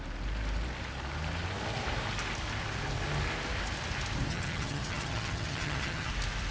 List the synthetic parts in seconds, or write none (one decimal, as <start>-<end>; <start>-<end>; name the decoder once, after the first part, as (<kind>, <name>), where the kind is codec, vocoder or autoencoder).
4.3-6.1 (vocoder, HiFi-GAN)